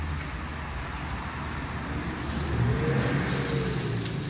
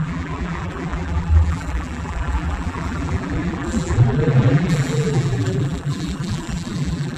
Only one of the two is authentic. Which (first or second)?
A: first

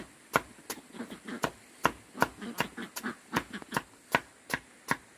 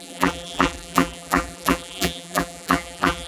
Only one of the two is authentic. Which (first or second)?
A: first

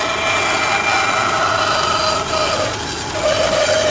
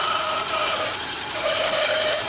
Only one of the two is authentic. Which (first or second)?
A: first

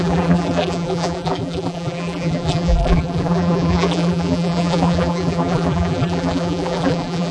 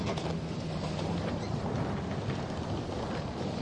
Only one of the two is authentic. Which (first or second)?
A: second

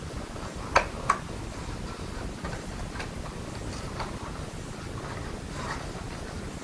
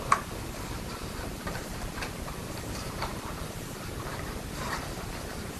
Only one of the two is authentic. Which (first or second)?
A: first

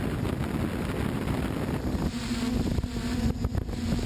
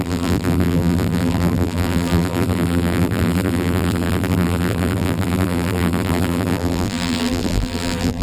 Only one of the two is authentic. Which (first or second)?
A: first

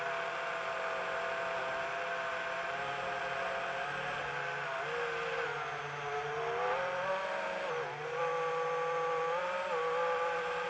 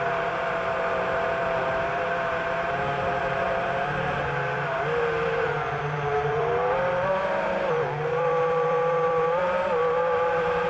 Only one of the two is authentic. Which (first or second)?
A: first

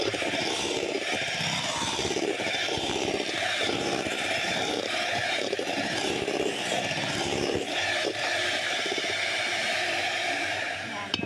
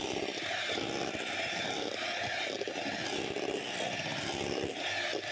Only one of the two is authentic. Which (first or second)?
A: second